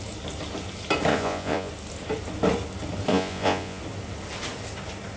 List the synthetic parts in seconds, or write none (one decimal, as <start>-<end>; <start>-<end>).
1.1-1.7; 3.1-3.8